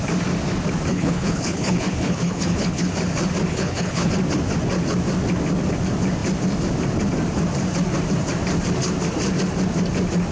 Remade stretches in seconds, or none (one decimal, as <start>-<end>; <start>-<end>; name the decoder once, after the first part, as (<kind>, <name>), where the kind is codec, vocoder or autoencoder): 0.9-2.9 (codec, HILCodec); 3.5-4.1